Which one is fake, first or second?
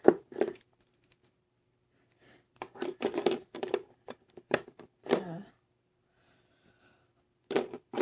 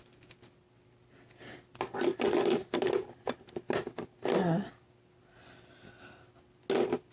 first